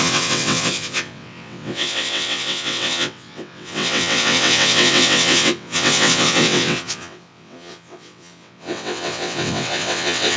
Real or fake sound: fake